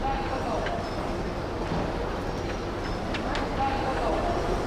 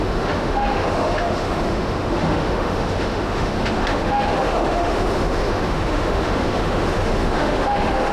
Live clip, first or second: first